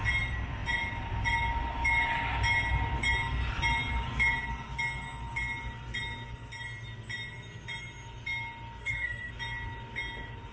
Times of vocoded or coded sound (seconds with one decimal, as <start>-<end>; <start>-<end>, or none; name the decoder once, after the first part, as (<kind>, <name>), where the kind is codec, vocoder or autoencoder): 8.8-9.3 (codec, SNAC)